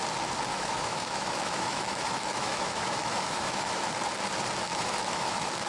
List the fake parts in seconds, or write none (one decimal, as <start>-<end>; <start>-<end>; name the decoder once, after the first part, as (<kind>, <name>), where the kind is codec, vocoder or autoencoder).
0.5-3.9 (autoencoder, DAC-VAE); 4.7-5.7